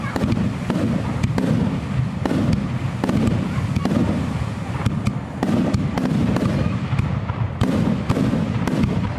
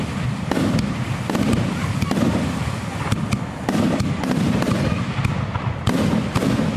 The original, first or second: first